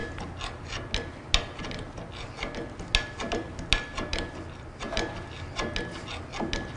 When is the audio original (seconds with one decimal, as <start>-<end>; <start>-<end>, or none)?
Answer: 0.0-6.8